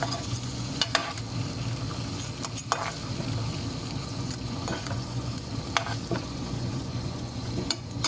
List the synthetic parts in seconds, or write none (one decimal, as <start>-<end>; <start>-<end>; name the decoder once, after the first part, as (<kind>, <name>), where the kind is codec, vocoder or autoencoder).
0.0-1.0 (vocoder, Vocos); 4.0-5.5; 6.1-8.1